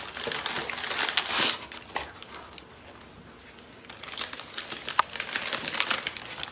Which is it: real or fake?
real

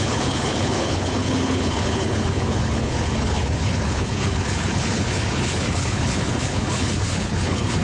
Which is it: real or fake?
fake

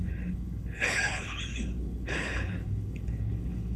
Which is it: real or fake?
fake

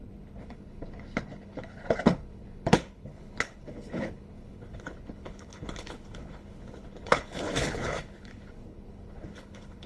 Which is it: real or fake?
fake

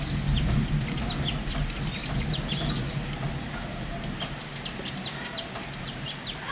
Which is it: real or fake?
real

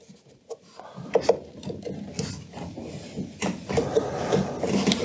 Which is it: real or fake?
real